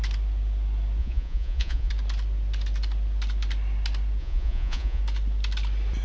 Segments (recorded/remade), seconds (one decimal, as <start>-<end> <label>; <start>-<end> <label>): 0.0-1.0 recorded; 1.0-1.9 remade; 1.9-4.2 recorded; 4.2-5.0 remade; 5.0-6.0 recorded